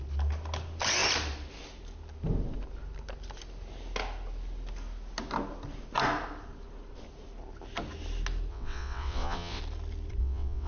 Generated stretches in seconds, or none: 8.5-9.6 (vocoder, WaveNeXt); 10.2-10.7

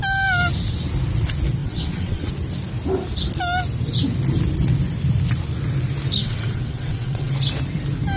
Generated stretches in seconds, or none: 1.6-2.3 (vocoder, WaveNeXt); 6.2-7.3

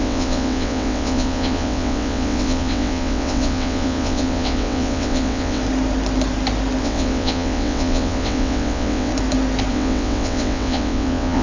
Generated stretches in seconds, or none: 0.0-5.6 (vocoder, WaveNeXt); 6.8-9.1; 9.7-11.4

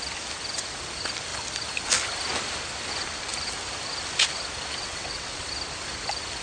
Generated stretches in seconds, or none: 4.8-5.5 (vocoder, WaveNeXt)

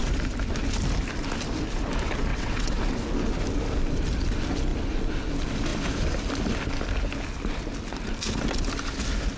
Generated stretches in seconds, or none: 2.3-2.8 (vocoder, WaveNeXt)

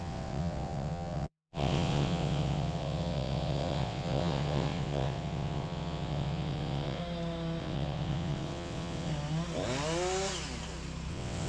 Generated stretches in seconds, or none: 0.0-7.0 (vocoder, WaveNeXt); 7.6-9.1; 11.1-11.5